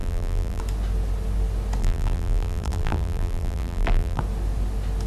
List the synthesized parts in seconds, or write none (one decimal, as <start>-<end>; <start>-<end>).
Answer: 0.0-0.6; 1.8-4.2